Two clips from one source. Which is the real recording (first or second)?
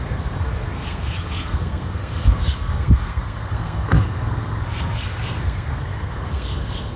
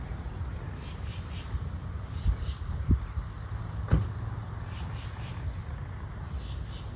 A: second